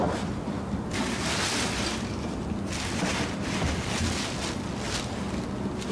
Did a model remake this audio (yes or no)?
no